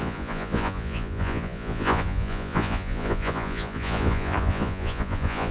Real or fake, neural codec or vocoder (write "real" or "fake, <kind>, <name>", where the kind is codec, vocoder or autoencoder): fake, vocoder, Vocos